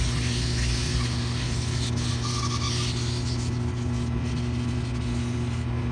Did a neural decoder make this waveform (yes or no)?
no